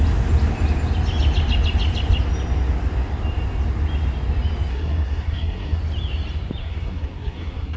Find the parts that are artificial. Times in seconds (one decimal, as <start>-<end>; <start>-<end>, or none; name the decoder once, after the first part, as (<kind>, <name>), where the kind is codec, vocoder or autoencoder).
4.7-5.8 (codec, SNAC); 6.6-7.8